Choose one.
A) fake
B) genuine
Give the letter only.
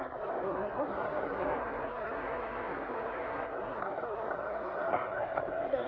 A